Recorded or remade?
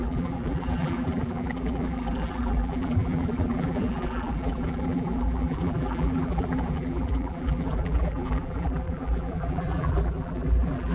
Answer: remade